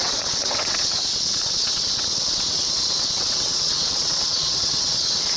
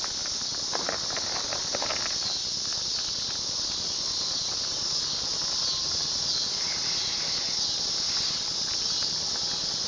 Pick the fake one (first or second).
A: first